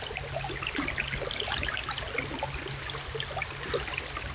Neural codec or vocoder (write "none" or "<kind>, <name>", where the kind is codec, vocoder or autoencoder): none